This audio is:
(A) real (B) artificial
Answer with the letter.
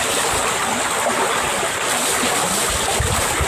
A